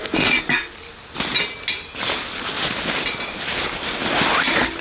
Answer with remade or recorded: recorded